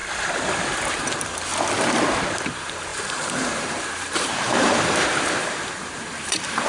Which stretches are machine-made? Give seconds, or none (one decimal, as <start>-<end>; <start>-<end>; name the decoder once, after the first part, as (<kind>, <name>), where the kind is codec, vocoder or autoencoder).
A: 0.9-1.5 (vocoder, BigVGAN v2); 2.5-6.7